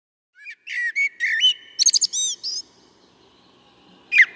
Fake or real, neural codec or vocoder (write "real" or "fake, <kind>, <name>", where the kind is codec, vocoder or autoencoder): real